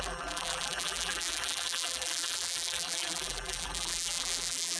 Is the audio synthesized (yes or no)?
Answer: yes